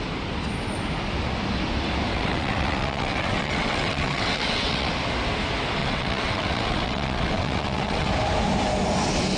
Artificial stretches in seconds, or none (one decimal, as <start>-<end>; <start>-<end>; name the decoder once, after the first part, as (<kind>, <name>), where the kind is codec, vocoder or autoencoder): 2.1-4.9 (vocoder, WaveNeXt); 5.8-8.1